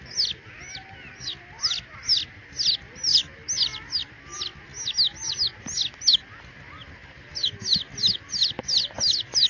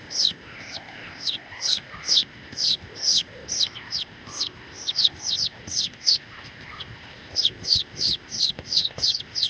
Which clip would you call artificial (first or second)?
second